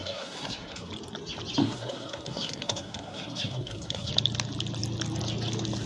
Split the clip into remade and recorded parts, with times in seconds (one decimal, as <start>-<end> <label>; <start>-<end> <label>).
0.0-0.9 remade; 0.9-1.6 recorded; 1.6-4.1 remade; 4.1-5.9 recorded